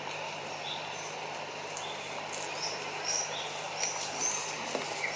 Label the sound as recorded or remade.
recorded